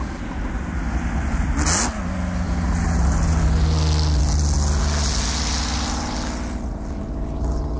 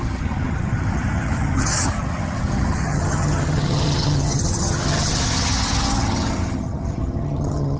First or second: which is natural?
first